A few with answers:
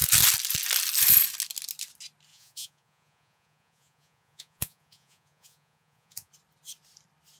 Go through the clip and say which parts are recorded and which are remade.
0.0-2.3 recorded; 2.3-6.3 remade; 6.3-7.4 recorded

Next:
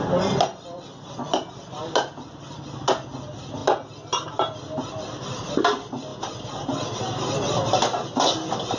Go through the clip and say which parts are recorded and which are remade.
0.0-8.8 recorded